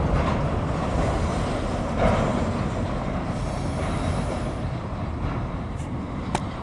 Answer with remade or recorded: remade